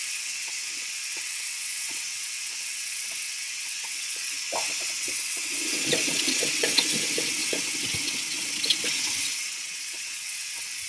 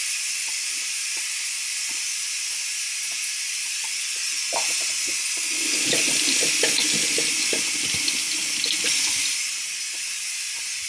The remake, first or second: first